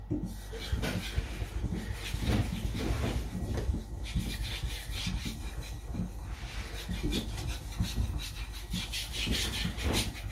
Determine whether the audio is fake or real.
real